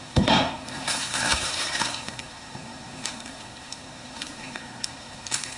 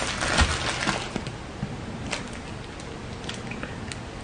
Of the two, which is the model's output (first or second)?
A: first